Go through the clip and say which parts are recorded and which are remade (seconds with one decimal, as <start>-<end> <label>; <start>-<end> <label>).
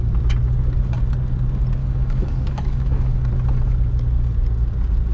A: 0.0-1.8 recorded; 1.8-3.3 remade; 3.3-5.1 recorded